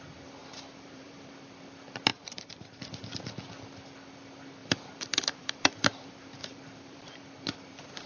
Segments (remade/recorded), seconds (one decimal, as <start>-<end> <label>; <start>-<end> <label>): 0.0-0.4 recorded; 0.4-1.3 remade; 1.3-2.1 recorded; 2.1-2.8 remade; 2.8-4.6 recorded; 4.6-7.2 remade; 7.2-8.1 recorded